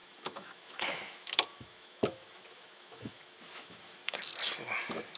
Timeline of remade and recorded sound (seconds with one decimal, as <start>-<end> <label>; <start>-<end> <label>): 0.0-4.3 remade; 4.3-5.2 recorded